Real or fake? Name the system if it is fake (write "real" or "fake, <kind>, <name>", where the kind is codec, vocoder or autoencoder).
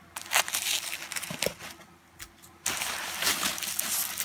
real